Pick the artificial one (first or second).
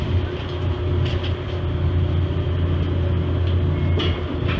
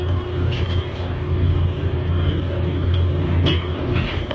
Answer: second